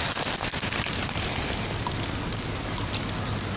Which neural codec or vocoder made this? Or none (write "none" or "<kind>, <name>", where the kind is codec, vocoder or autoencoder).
none